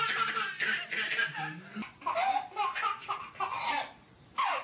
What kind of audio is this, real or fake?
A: real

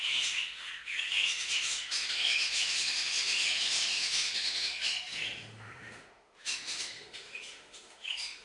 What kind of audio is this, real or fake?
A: fake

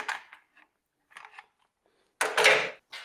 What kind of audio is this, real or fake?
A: real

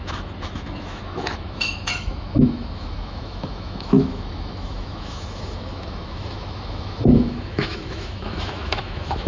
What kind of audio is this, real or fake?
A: fake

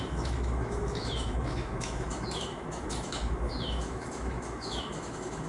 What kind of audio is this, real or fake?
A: fake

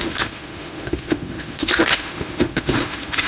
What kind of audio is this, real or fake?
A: fake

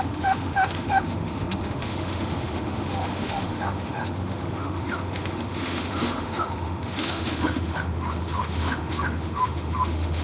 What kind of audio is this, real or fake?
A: fake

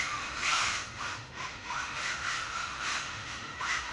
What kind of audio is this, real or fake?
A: fake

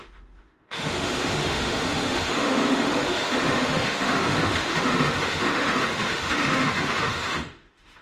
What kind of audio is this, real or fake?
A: fake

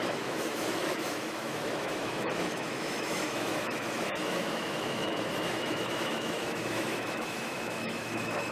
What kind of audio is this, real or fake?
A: fake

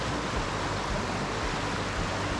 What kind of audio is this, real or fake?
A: real